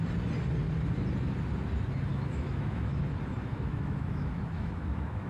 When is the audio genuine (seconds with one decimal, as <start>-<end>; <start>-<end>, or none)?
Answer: 0.0-2.1; 3.0-3.4